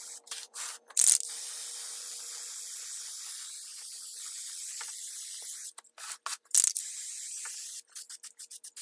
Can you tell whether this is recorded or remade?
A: recorded